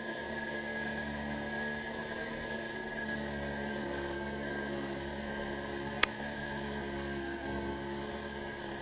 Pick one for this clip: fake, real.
fake